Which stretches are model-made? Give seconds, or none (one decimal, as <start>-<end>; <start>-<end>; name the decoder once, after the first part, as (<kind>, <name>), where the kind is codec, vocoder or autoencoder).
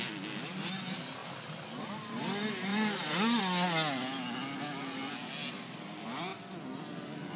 1.2-1.7 (vocoder, BigVGAN v2); 2.7-3.4; 6.3-6.8